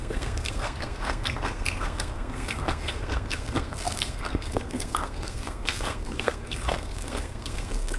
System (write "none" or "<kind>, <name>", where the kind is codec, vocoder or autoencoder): codec, SNAC